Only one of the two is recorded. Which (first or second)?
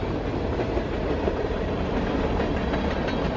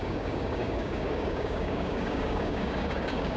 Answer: first